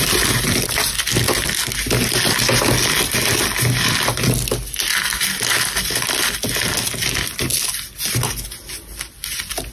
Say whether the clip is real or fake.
real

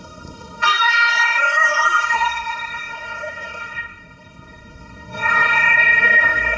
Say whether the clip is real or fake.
fake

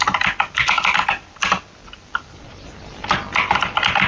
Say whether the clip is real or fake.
real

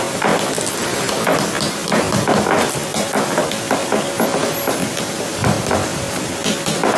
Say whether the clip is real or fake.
real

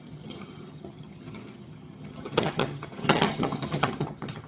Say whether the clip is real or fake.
fake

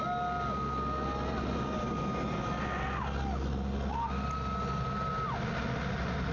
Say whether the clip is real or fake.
real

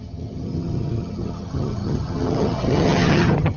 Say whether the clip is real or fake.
fake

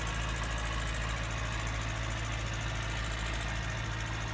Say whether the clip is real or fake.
real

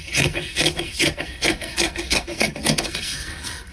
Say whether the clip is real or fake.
fake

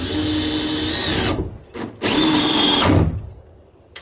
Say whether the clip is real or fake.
real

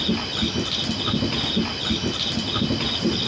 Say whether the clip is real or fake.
real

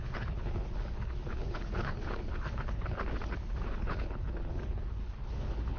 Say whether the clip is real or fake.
fake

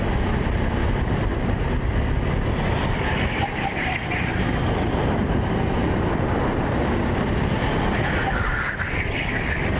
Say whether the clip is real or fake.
real